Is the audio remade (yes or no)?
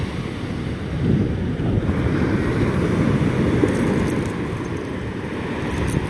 no